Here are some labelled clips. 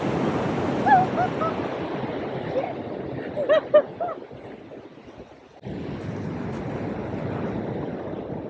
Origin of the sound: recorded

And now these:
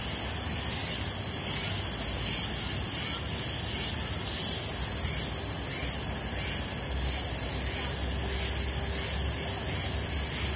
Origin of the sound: recorded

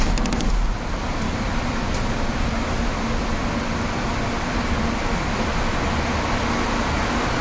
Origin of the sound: recorded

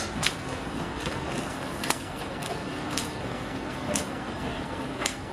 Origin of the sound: remade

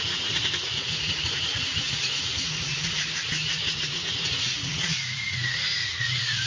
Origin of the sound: remade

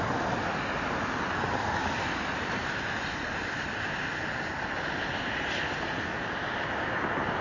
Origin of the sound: recorded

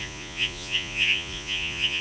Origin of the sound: remade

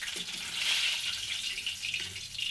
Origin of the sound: remade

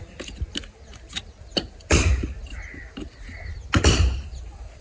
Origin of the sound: recorded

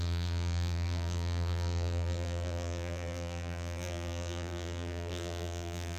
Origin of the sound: remade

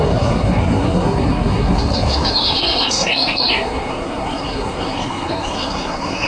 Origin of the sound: remade